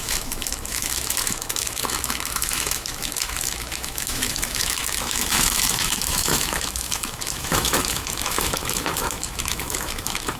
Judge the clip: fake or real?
fake